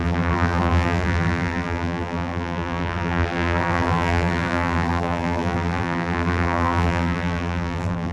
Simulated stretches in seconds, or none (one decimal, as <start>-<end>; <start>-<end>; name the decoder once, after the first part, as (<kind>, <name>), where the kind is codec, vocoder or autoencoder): 0.0-8.1 (vocoder, BigVGAN v2)

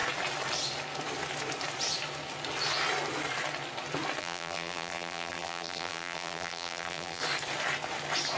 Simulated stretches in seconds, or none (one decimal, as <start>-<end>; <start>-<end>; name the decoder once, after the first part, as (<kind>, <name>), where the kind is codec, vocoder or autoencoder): 4.2-7.2 (vocoder, BigVGAN v2)

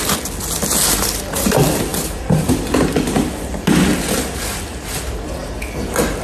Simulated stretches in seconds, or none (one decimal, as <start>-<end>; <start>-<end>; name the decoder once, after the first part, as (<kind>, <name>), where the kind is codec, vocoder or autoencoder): 1.9-2.5 (vocoder, BigVGAN v2)

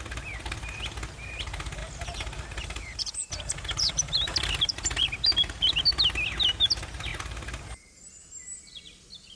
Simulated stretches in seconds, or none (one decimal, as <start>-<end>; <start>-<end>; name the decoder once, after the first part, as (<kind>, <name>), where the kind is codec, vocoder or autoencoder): 1.8-5.8 (vocoder, BigVGAN v2)

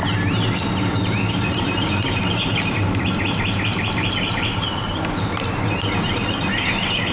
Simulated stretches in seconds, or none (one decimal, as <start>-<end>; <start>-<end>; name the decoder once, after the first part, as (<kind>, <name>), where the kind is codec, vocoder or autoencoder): 1.0-5.3 (vocoder, BigVGAN v2)

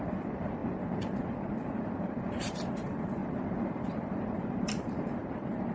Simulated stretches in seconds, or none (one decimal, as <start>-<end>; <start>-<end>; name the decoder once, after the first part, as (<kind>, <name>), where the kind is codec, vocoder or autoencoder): 0.0-5.7 (vocoder, BigVGAN v2)

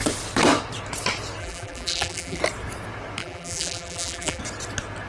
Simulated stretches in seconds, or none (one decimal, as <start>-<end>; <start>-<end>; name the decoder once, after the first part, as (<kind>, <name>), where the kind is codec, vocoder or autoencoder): 1.4-2.4 (vocoder, BigVGAN v2); 3.2-4.4

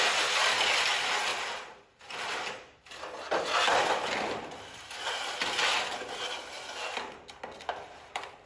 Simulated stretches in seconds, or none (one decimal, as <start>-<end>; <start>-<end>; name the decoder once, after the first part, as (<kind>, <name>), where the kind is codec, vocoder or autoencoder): 1.3-2.8 (vocoder, BigVGAN v2)